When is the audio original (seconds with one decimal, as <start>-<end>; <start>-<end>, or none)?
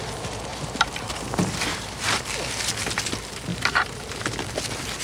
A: 0.0-0.5; 1.1-1.7; 2.2-3.5; 4.1-5.0